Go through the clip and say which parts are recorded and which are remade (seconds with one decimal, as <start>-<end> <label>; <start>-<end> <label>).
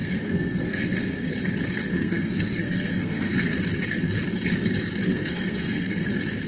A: 0.0-1.3 remade; 1.3-1.9 recorded; 1.9-3.3 remade; 3.3-5.1 recorded; 5.1-6.1 remade; 6.1-6.5 recorded